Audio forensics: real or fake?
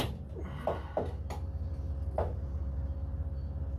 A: real